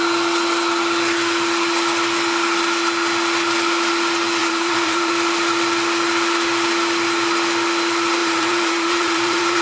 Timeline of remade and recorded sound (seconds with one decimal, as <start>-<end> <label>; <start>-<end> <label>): 0.0-4.4 recorded; 4.4-5.1 remade; 5.1-8.2 recorded; 8.2-9.6 remade